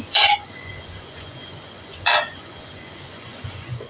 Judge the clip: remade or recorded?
remade